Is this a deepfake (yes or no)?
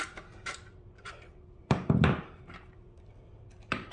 yes